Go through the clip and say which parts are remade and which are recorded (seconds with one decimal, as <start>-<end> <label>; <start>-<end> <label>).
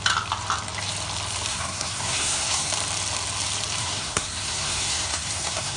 0.0-1.5 recorded; 1.5-2.7 remade; 2.7-3.8 recorded; 3.8-5.8 remade